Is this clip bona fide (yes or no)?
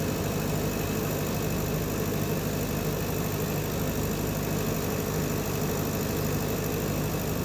yes